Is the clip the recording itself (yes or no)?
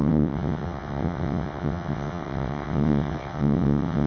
no